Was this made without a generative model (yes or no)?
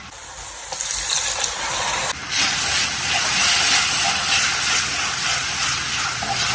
yes